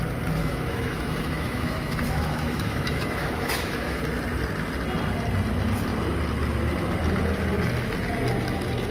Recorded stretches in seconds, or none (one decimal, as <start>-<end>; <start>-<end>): 0.0-0.4; 4.0-8.9